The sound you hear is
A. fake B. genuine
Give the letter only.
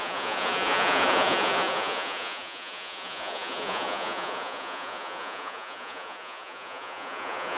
A